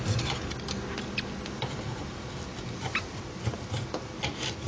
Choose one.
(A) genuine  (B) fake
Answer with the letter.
A